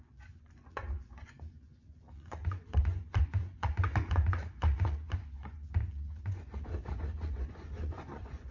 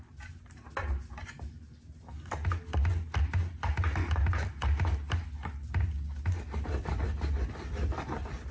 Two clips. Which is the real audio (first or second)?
second